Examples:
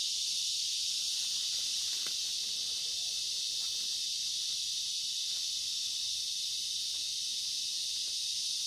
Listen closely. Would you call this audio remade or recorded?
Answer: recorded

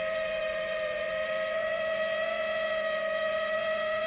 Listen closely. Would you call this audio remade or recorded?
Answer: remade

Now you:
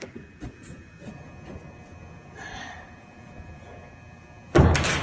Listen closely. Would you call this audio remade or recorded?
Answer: recorded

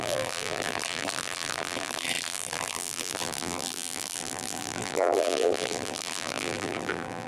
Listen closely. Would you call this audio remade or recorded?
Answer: remade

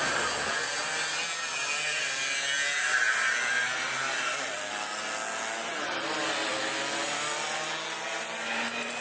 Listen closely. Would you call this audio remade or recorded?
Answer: recorded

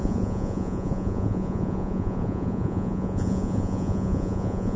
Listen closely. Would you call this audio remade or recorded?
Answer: remade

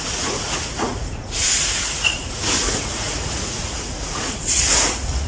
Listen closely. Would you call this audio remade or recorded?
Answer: remade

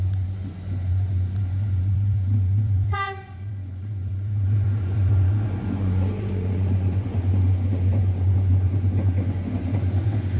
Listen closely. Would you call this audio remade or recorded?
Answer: remade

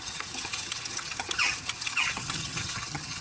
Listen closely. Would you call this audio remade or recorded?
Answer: remade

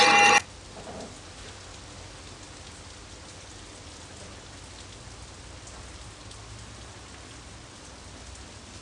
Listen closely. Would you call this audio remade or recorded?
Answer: recorded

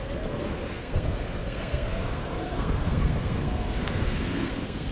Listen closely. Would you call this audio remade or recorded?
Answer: remade